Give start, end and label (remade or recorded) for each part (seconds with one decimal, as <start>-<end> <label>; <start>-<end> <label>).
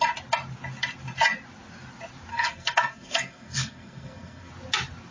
0.0-2.3 recorded; 2.3-4.5 remade; 4.5-5.1 recorded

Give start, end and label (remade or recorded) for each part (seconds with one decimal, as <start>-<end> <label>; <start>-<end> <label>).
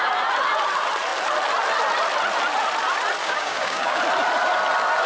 0.0-3.2 recorded; 3.2-4.0 remade; 4.0-5.1 recorded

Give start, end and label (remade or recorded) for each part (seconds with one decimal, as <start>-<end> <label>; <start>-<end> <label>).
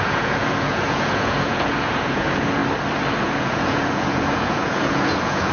0.0-2.6 remade; 2.6-3.2 recorded; 3.2-5.5 remade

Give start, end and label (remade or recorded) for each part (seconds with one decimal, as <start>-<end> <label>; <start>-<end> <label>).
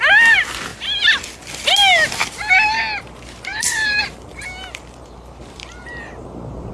0.0-3.5 recorded; 3.5-6.7 remade